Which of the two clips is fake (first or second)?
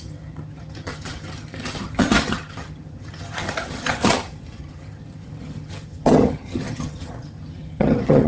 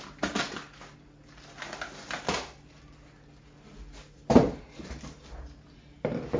first